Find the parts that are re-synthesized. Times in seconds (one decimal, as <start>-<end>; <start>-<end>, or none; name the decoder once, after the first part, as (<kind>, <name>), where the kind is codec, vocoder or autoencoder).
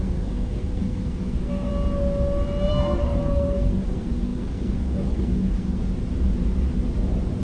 0.0-1.7 (codec, SNAC); 2.7-5.9